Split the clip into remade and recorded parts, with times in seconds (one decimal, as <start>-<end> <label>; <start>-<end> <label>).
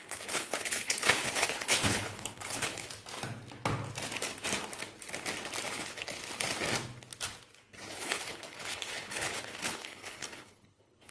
0.0-2.9 remade; 2.9-5.7 recorded; 5.7-6.2 remade; 6.2-7.9 recorded; 7.9-11.1 remade